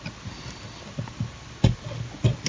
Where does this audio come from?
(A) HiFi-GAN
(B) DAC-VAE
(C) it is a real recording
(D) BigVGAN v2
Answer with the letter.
C